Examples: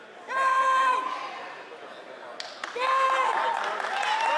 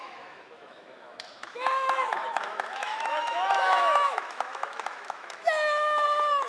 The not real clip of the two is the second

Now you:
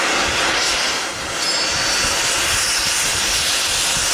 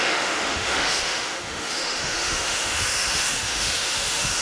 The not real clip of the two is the second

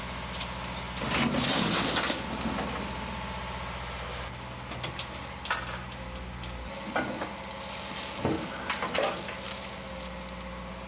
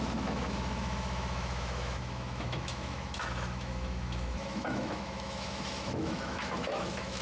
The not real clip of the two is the second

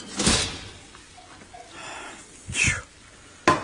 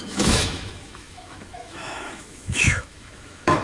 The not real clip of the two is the second